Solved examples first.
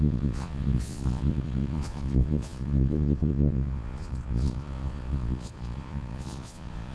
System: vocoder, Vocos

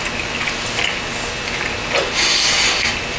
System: none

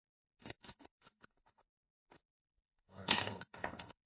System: codec, SNAC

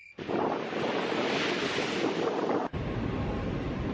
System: none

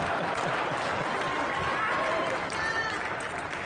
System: none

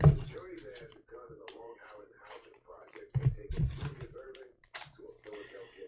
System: vocoder, BigVGAN v2